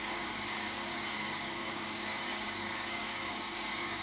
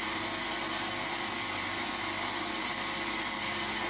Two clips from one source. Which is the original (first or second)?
second